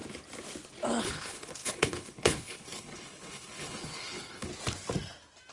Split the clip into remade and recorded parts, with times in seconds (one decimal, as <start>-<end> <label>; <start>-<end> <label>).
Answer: 0.0-1.0 recorded; 1.0-4.5 remade; 4.5-5.5 recorded